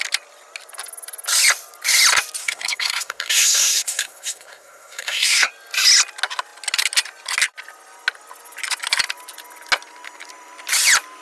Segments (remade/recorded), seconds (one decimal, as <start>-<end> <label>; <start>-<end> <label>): 0.0-2.4 recorded; 2.4-5.5 remade; 5.5-11.2 recorded